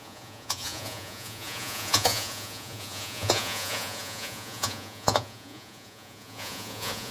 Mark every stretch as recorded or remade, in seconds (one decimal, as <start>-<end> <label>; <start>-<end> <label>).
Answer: 0.0-7.1 remade